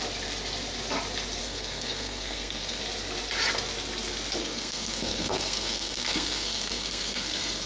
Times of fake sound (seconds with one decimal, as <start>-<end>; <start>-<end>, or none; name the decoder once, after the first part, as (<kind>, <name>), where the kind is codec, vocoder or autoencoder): 1.4-2.8 (codec, SNAC); 4.4-7.7